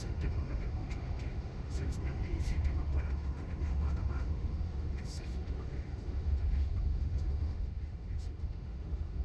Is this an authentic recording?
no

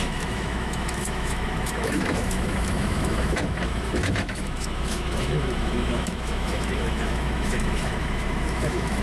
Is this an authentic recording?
no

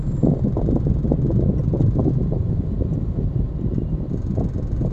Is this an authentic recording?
yes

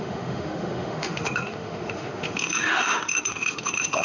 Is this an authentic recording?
no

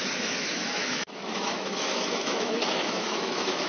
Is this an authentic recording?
no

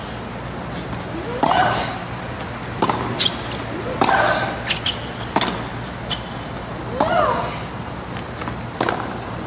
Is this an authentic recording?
yes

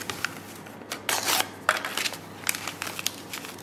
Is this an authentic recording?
yes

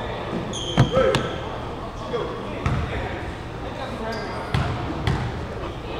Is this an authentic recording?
yes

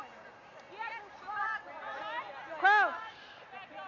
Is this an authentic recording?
yes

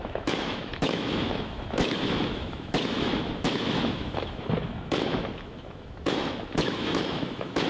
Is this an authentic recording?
no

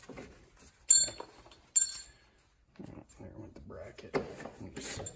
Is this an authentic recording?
yes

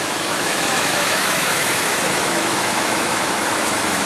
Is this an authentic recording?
no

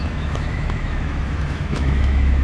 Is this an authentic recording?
no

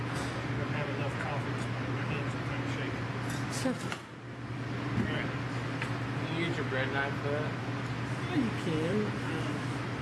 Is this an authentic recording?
yes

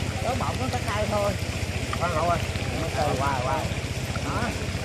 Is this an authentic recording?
yes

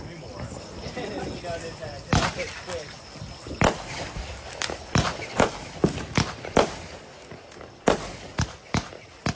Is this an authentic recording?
yes